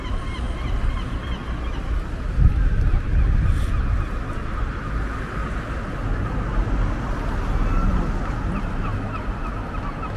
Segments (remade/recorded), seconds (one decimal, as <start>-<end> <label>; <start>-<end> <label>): 0.0-1.4 recorded; 1.4-2.1 remade; 2.1-10.2 recorded